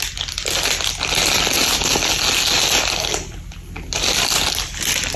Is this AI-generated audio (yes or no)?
no